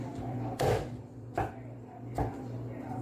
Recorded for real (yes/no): no